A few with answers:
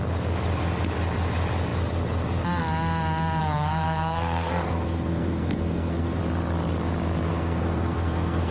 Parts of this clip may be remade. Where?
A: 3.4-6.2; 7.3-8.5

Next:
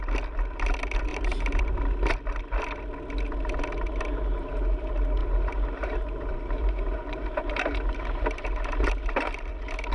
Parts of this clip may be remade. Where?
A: 1.1-1.7; 5.2-9.5

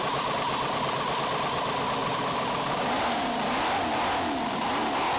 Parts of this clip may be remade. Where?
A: none

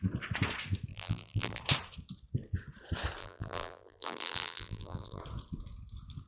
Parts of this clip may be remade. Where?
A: 0.9-1.6; 3.2-5.2

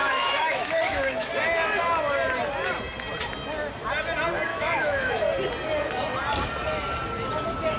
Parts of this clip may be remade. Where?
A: 0.0-1.3; 4.5-5.1